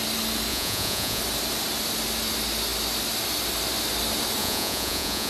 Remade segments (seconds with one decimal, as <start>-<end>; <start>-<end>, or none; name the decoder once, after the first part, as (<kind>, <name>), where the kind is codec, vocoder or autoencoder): 0.5-1.2 (vocoder, Vocos); 4.4-5.3